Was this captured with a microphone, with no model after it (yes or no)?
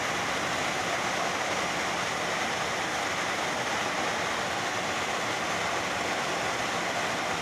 yes